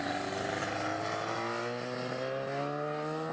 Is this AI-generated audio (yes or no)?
no